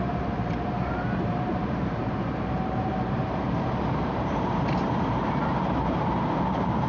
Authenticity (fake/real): fake